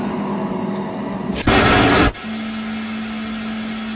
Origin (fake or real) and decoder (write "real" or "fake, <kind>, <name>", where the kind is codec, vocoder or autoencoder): real